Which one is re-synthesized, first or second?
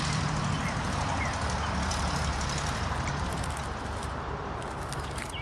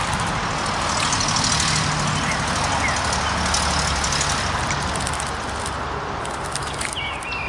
first